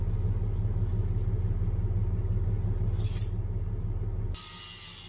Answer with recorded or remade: recorded